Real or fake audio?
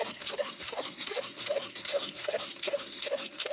fake